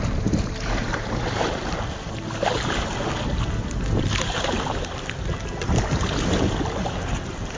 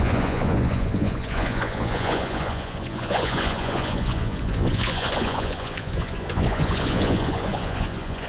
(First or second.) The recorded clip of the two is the first